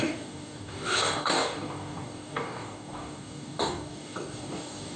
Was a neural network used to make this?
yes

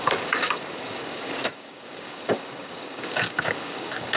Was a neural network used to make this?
yes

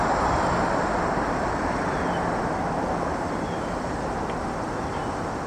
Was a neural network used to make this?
no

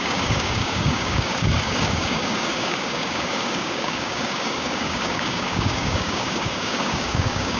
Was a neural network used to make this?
yes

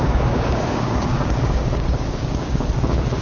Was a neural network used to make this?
yes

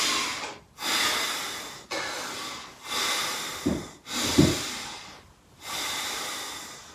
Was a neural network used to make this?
no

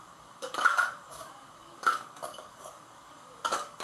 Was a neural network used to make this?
yes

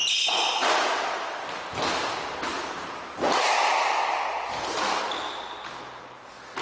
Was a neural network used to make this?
no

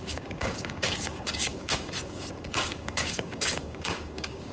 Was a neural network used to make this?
yes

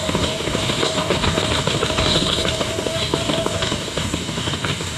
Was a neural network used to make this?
yes